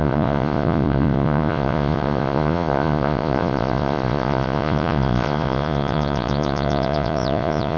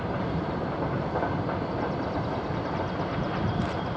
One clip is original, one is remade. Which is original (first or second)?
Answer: second